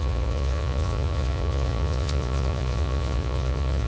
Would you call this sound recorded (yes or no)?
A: no